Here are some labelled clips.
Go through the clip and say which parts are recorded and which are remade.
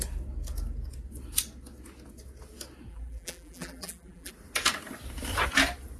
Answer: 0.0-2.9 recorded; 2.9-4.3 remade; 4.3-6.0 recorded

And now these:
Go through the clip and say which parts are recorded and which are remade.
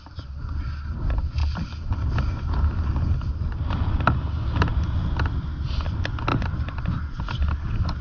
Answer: 0.0-1.4 recorded; 1.4-3.7 remade; 3.7-6.3 recorded; 6.3-7.1 remade; 7.1-8.0 recorded